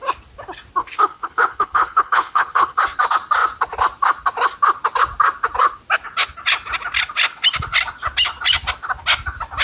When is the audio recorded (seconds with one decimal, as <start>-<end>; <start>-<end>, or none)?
0.0-0.8; 2.8-9.6